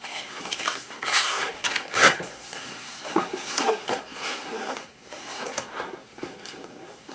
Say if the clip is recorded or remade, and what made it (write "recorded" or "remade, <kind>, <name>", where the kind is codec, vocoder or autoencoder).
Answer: remade, codec, SNAC